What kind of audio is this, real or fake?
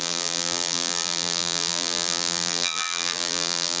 fake